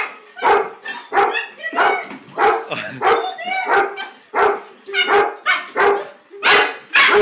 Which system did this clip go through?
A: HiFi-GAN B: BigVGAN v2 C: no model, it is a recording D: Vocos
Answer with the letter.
C